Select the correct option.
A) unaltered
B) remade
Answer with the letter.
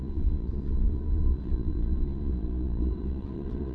B